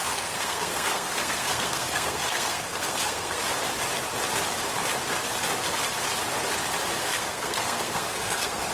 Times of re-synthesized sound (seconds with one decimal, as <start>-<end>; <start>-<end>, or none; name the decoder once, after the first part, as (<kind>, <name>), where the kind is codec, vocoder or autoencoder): 0.0-3.4 (codec, SNAC); 7.0-8.7